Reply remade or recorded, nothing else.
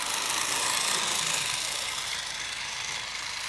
recorded